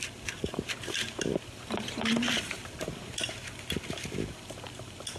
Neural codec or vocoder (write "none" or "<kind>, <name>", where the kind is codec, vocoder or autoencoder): none